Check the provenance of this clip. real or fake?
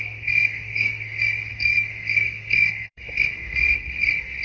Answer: fake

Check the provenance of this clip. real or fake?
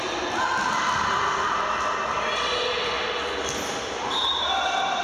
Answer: real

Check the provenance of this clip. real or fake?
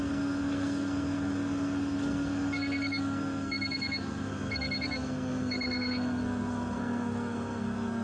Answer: fake